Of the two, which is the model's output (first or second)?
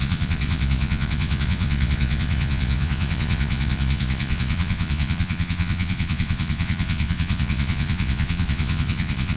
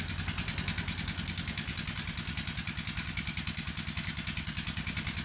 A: first